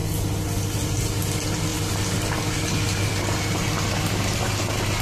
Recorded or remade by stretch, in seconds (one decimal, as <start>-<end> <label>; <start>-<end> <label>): 0.0-5.0 recorded